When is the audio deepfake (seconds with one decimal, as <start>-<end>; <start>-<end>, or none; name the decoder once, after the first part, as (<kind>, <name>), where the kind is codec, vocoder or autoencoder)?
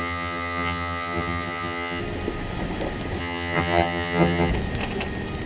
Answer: 0.0-2.0 (vocoder, HiFi-GAN); 3.2-4.5